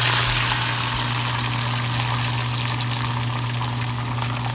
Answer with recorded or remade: recorded